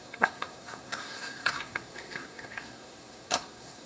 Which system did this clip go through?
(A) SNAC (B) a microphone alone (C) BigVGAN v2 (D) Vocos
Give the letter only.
A